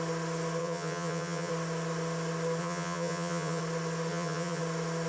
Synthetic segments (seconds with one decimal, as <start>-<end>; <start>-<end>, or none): 0.6-1.5; 2.6-3.6; 4.1-4.6